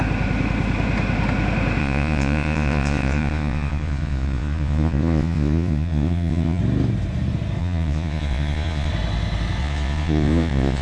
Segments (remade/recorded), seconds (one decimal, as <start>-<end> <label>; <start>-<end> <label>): 0.0-1.8 recorded; 1.8-6.6 remade; 6.6-7.6 recorded; 7.6-8.9 remade; 8.9-9.6 recorded; 9.6-10.8 remade